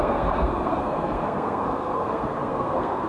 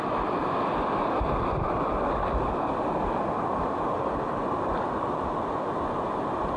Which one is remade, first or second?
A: first